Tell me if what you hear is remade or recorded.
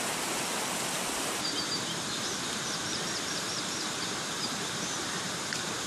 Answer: remade